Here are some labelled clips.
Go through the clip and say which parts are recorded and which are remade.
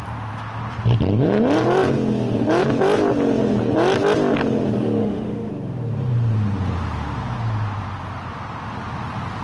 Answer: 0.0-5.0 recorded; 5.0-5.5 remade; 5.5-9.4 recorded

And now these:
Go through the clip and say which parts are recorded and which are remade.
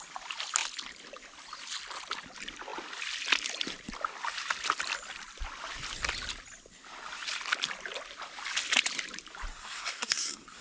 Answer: 0.0-9.5 recorded; 9.5-10.6 remade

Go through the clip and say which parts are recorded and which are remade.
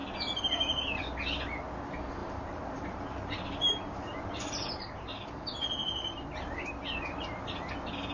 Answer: 0.0-2.2 recorded; 2.2-6.7 remade; 6.7-8.1 recorded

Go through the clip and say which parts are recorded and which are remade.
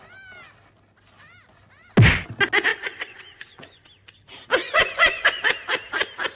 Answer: 0.0-2.7 recorded; 2.7-3.9 remade; 3.9-4.6 recorded; 4.6-5.4 remade; 5.4-6.4 recorded